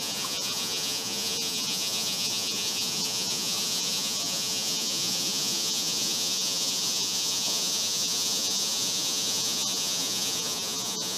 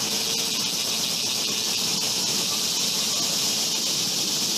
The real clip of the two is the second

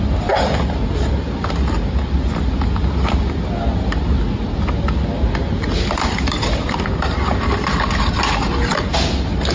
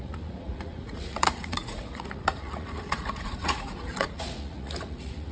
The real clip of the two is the first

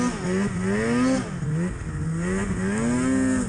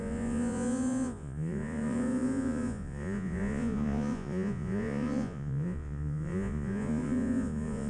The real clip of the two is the first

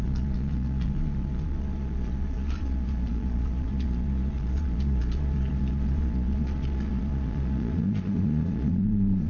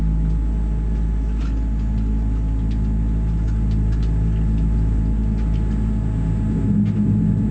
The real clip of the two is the second